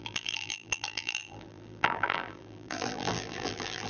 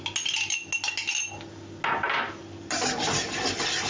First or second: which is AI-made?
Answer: first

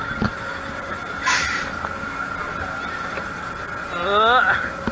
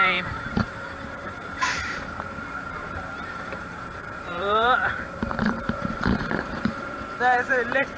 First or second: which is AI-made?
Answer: second